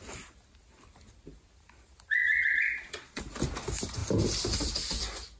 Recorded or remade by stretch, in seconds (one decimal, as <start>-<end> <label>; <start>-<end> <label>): 0.0-2.2 recorded; 2.2-3.2 remade; 3.2-5.4 recorded

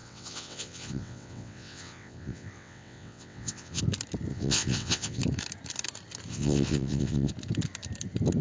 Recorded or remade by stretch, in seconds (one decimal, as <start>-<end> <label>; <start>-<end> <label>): 0.0-3.8 remade; 3.8-4.3 recorded; 4.3-5.2 remade; 5.2-6.3 recorded; 6.3-7.3 remade; 7.3-8.4 recorded

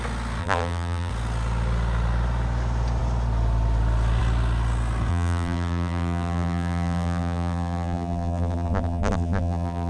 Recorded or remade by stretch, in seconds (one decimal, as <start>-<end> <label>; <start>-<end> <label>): 0.0-0.4 recorded; 0.4-1.1 remade; 1.1-5.1 recorded; 5.1-9.9 remade

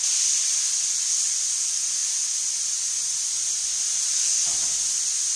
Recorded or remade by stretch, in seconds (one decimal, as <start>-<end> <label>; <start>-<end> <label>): 0.0-5.4 recorded

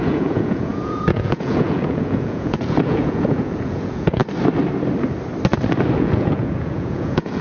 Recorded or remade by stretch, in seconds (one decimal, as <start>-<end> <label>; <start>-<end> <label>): 0.0-4.2 remade; 4.2-5.9 recorded; 5.9-7.4 remade

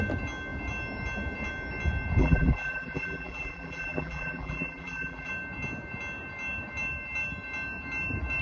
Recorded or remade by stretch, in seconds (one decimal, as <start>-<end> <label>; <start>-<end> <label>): 0.0-2.2 recorded; 2.2-5.3 remade; 5.3-8.4 recorded